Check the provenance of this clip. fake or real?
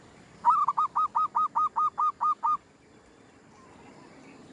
real